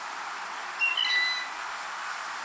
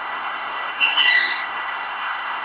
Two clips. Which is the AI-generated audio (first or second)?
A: second